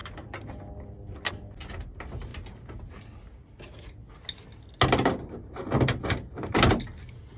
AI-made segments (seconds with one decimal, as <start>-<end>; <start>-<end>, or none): none